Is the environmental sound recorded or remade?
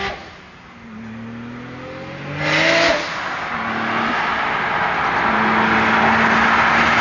recorded